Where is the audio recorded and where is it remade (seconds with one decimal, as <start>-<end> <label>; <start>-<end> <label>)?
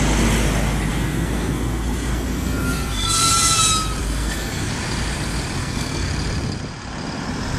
0.0-0.9 recorded; 0.9-3.3 remade; 3.3-4.0 recorded; 4.0-4.7 remade; 4.7-5.6 recorded; 5.6-6.1 remade; 6.1-7.6 recorded